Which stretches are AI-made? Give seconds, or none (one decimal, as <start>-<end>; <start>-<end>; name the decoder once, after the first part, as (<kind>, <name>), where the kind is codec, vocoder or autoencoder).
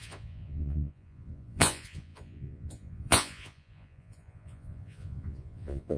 0.0-6.0 (vocoder, Vocos)